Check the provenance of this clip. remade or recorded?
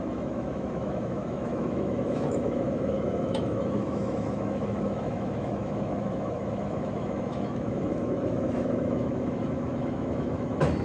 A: remade